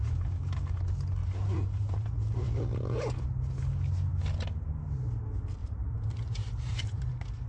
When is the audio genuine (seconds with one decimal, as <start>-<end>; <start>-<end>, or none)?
0.0-1.2; 2.6-5.6; 7.1-7.5